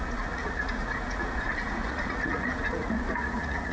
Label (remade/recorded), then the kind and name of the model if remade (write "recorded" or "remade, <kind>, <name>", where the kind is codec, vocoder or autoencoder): remade, vocoder, Vocos